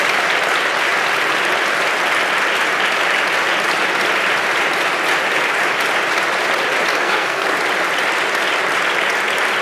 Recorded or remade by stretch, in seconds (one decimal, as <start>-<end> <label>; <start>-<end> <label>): 0.0-6.9 recorded; 6.9-7.5 remade; 7.5-9.6 recorded